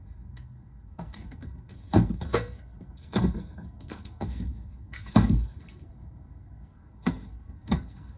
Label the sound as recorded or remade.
remade